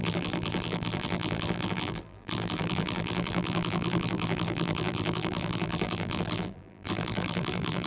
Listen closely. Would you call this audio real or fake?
fake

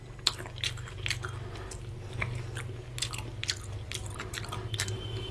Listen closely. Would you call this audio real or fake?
real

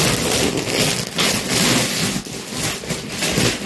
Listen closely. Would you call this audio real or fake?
real